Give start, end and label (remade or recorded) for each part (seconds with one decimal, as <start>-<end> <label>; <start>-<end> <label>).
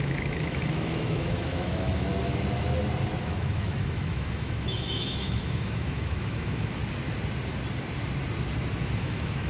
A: 0.0-2.1 remade; 2.1-3.2 recorded; 3.2-6.8 remade; 6.8-9.0 recorded; 9.0-9.5 remade